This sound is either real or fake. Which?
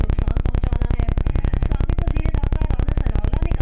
real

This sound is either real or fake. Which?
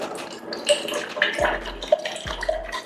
real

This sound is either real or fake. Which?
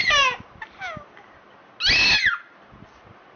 real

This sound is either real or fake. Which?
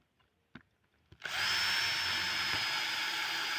real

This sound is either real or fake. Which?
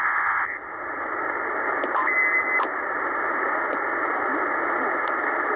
real